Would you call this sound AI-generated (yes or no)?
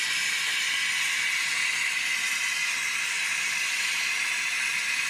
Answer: no